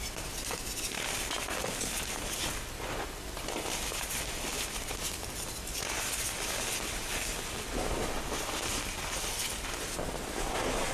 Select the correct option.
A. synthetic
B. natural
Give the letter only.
B